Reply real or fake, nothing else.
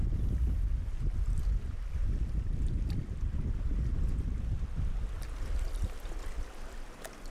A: real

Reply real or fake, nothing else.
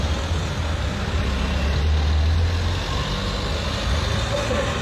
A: real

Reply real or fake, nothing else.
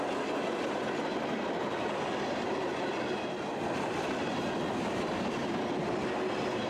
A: real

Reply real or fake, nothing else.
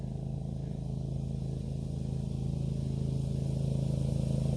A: real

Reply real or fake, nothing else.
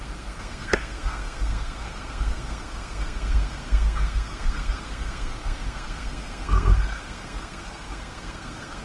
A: fake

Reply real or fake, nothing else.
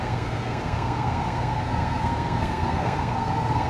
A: fake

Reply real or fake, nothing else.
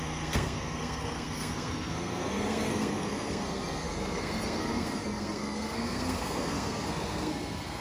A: fake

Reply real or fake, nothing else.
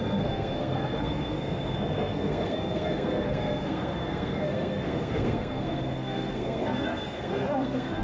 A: fake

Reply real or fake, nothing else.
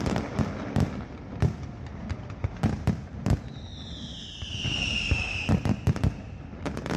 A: real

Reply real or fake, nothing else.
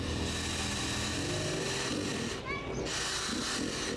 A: real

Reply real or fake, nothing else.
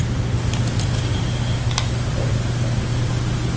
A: real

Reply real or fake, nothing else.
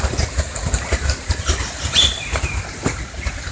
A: real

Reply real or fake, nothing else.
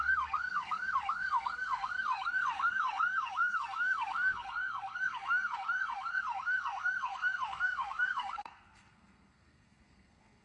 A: fake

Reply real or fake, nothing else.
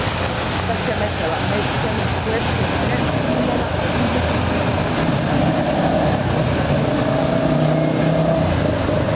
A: real